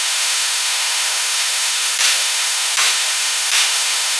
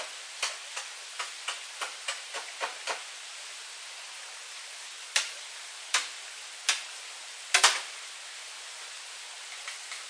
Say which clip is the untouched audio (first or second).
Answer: second